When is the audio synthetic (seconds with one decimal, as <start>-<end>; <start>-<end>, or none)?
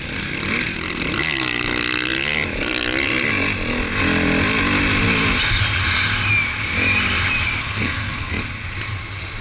7.6-8.4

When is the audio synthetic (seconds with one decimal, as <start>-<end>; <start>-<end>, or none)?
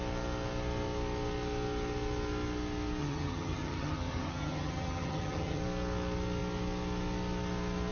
3.0-5.6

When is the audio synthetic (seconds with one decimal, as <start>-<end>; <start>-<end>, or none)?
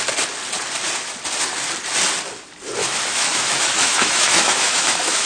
2.8-5.3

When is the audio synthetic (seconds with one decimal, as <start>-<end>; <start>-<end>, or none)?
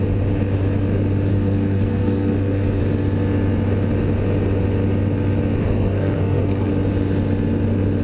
1.3-2.8; 5.6-6.7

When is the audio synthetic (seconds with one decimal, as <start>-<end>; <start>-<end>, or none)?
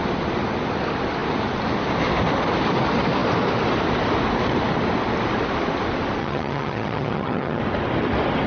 6.2-7.6